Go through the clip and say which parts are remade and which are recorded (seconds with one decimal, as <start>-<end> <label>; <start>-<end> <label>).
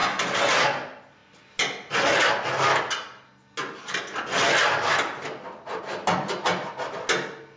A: 0.0-7.6 recorded